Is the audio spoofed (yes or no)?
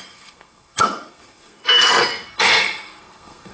yes